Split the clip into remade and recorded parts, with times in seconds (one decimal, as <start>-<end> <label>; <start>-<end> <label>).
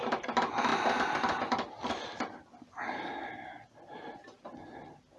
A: 0.0-5.2 recorded